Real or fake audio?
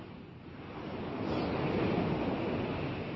real